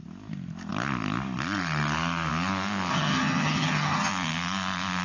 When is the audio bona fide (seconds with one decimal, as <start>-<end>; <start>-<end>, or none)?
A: 0.0-2.9; 4.1-5.0